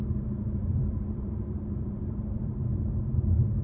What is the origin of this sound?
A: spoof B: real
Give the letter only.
A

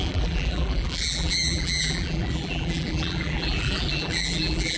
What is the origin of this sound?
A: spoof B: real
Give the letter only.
A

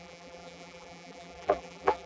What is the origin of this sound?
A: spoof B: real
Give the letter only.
A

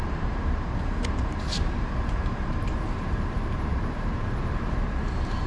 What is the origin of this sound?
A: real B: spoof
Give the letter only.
B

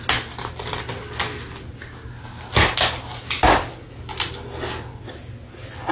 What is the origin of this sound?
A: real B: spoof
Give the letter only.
A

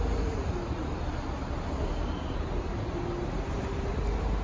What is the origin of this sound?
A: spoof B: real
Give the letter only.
B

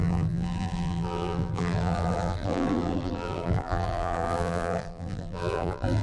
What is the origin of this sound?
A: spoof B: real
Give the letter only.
A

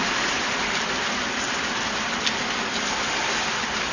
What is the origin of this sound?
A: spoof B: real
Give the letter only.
B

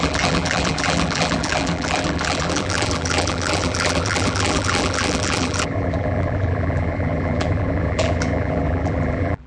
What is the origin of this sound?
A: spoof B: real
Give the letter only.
A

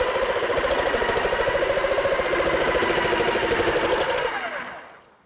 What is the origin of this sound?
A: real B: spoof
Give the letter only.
A